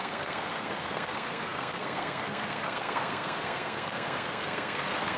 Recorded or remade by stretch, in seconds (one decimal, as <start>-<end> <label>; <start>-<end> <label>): 0.0-5.2 remade